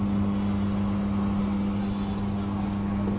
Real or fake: real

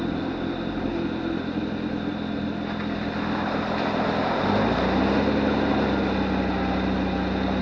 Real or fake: real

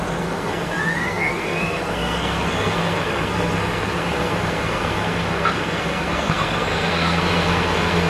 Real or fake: fake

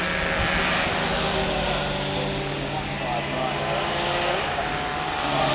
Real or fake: real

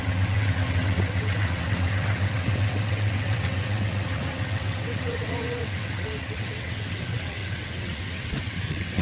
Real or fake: fake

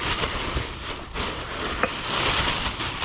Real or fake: fake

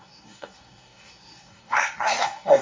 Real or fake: fake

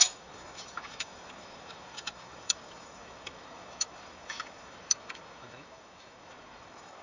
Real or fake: fake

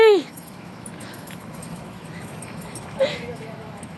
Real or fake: fake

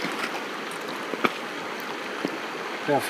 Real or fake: real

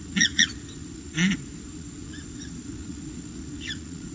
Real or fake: fake